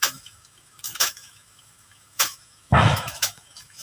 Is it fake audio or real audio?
fake